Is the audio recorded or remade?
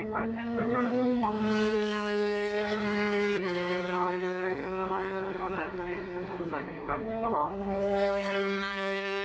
remade